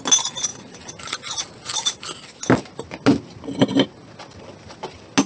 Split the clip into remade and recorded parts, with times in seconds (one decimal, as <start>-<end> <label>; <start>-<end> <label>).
0.0-5.3 recorded